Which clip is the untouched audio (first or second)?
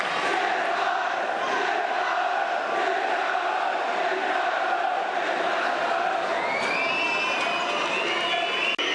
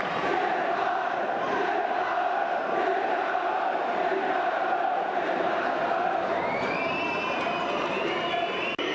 first